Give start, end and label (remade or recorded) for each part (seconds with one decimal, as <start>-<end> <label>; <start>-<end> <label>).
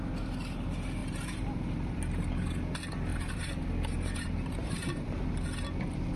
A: 0.0-1.0 recorded; 1.0-2.6 remade; 2.6-3.1 recorded; 3.1-5.2 remade; 5.2-6.2 recorded